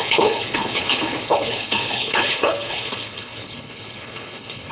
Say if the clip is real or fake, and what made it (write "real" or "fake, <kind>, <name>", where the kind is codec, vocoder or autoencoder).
fake, codec, HILCodec